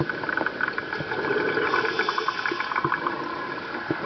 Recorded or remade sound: recorded